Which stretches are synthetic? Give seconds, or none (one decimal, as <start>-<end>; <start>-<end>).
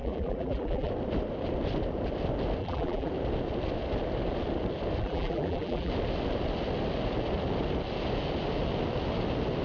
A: 0.0-0.9; 2.6-3.1; 5.0-5.9